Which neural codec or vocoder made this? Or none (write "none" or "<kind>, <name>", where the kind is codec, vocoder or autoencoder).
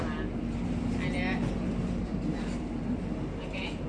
vocoder, BigVGAN v2